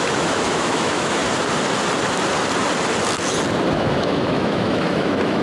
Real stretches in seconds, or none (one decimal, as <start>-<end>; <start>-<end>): 1.2-3.7